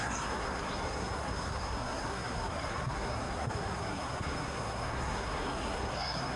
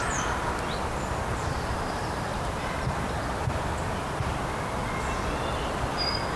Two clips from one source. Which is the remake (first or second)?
first